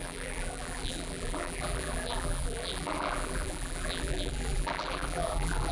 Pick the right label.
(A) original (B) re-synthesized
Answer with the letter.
B